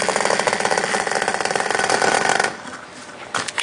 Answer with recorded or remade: recorded